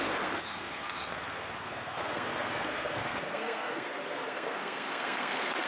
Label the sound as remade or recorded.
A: remade